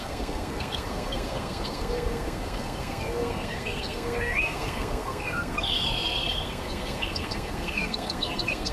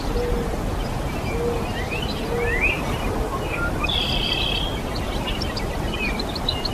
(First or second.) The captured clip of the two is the second